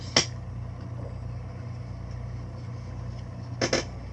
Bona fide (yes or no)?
yes